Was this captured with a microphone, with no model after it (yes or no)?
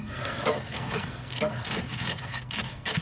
no